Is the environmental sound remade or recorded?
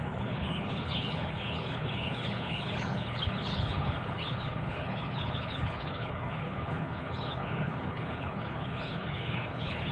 remade